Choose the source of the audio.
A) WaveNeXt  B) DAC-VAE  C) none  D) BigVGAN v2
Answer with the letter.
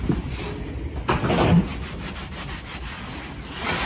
C